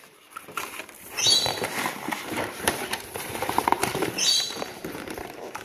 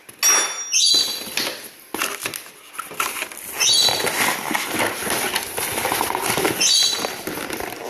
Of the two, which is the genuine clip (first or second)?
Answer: second